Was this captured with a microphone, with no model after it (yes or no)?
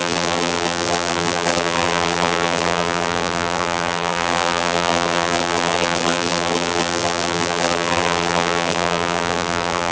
no